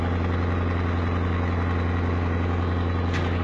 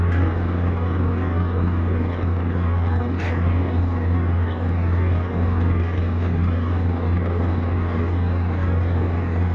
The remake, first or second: second